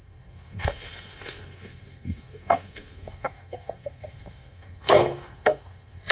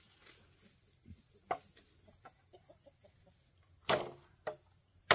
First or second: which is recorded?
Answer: second